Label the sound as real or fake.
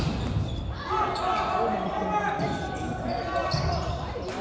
real